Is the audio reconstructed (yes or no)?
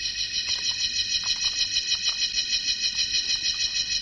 no